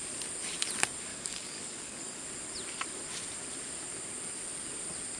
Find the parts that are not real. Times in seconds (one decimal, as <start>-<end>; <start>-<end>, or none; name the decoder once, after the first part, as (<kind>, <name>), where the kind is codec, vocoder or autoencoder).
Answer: 1.1-2.2 (codec, DAC)